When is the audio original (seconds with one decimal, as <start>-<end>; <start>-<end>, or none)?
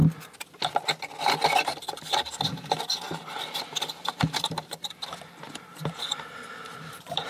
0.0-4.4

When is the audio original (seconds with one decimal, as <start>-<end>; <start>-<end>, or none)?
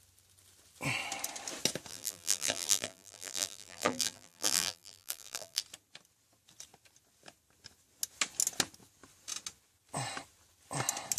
0.0-1.9; 5.6-11.2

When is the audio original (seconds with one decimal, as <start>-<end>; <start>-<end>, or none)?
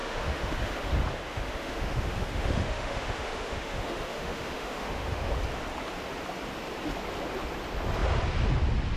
0.9-1.3; 5.3-9.0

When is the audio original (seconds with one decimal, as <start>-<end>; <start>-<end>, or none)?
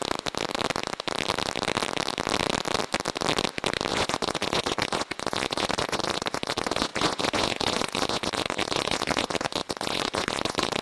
0.0-3.9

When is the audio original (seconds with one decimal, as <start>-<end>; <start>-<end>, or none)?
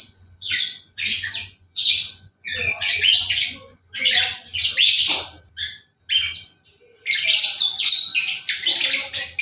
4.3-7.4; 8.1-9.4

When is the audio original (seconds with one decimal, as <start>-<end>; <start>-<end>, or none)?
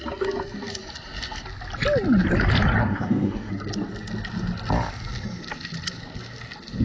0.0-2.8; 3.5-6.8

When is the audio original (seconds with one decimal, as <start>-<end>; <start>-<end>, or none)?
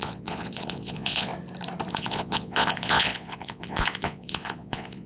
1.3-1.9